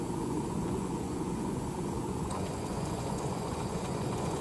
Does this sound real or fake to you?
fake